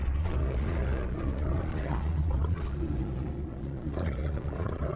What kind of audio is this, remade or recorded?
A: remade